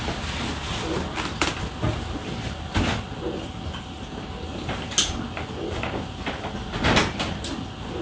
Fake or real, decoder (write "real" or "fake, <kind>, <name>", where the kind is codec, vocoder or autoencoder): real